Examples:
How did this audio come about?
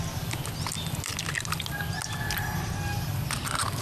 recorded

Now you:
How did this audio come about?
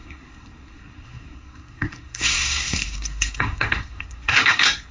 remade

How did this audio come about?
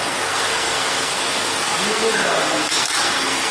remade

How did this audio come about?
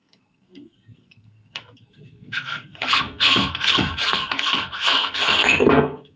remade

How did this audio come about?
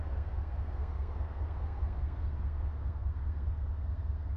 remade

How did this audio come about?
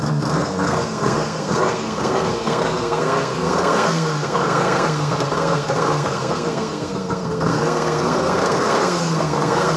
remade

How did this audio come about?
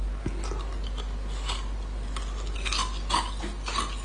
recorded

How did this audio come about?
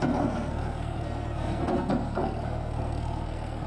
remade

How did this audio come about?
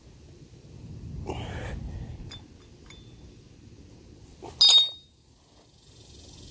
recorded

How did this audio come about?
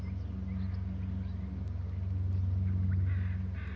recorded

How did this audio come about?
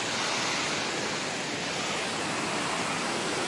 recorded